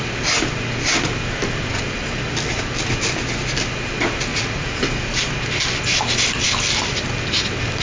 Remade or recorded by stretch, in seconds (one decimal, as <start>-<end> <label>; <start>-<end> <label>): 0.0-4.3 recorded; 4.3-4.8 remade; 4.8-7.8 recorded